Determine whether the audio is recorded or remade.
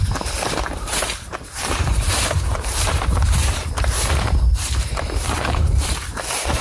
remade